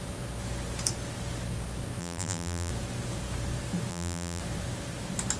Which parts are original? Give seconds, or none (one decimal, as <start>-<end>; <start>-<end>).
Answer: 0.0-2.0; 2.7-3.9; 4.4-5.4